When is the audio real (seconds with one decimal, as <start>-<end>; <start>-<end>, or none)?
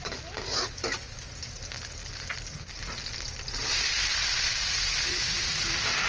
0.0-6.1